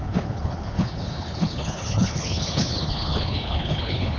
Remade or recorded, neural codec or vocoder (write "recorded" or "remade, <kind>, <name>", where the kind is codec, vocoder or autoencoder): remade, codec, HILCodec